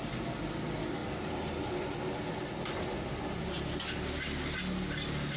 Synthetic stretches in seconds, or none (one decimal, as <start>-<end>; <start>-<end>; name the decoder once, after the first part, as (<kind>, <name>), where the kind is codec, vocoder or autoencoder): none